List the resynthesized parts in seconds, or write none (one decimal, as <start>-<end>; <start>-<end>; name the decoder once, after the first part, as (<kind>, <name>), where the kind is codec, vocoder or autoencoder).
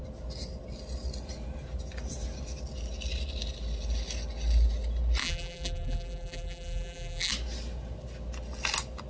5.2-7.3 (vocoder, BigVGAN v2)